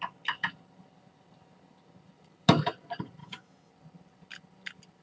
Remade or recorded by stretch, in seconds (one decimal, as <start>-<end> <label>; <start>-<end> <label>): 0.0-3.2 recorded; 3.2-3.7 remade; 3.7-5.0 recorded